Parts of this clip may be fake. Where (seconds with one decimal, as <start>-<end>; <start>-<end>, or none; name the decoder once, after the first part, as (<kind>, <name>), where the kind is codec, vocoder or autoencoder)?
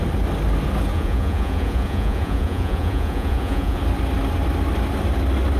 0.9-3.8 (vocoder, Vocos)